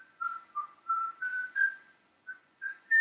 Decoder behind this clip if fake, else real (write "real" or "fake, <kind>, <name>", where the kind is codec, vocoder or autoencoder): fake, vocoder, Vocos